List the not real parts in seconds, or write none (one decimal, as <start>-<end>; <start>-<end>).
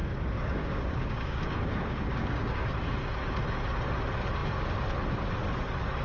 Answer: 0.0-2.7